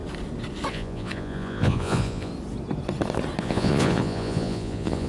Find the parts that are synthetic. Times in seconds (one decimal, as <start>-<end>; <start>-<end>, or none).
0.7-2.3; 3.4-5.1